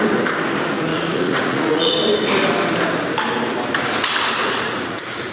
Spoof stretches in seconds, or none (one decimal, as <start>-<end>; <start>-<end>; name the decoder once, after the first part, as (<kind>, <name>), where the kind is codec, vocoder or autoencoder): 0.9-1.9 (vocoder, Vocos); 4.4-5.3